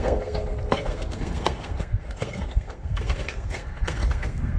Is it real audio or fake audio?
fake